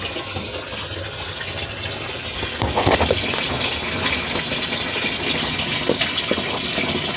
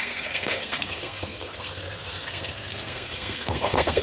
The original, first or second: first